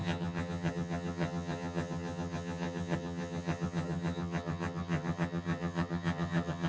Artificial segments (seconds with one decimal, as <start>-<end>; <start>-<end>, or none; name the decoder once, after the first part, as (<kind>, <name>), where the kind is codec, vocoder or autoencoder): 0.0-6.7 (vocoder, HiFi-GAN)